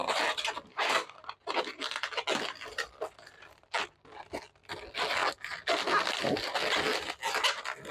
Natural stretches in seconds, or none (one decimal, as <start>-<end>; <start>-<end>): 0.0-0.7; 1.2-7.9